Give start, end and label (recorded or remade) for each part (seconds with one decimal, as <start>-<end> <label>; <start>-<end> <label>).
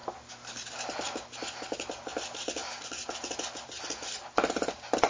0.0-5.1 recorded